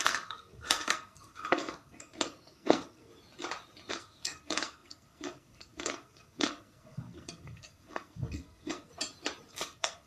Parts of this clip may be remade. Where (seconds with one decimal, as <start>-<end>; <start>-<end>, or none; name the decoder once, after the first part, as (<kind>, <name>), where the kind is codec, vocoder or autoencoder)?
0.0-3.1 (codec, SNAC); 3.9-8.9; 9.5-10.1